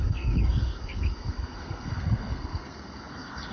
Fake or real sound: fake